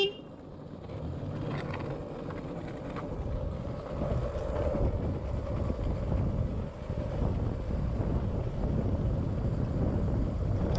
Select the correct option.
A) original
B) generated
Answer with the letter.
A